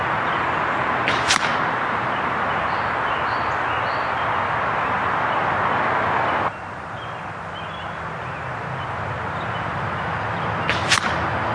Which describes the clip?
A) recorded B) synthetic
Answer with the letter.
A